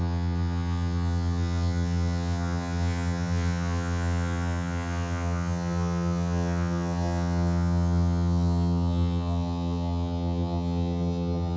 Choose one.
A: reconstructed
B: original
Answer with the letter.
A